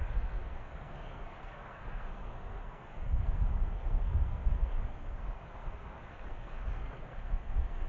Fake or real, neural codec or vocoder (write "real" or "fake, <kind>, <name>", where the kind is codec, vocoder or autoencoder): fake, codec, SNAC